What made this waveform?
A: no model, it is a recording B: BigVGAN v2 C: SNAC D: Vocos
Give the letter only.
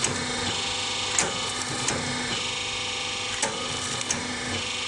A